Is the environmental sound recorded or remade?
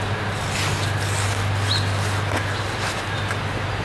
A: recorded